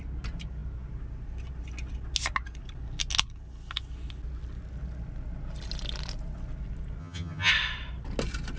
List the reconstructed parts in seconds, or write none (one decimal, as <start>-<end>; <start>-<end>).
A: 7.0-7.5